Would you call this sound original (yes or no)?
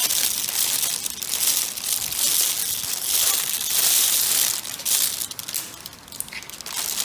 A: yes